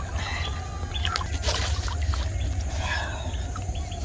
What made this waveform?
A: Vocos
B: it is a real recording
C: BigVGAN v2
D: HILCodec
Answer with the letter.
B